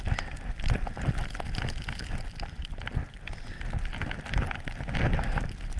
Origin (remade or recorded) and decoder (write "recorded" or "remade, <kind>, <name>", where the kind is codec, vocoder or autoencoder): recorded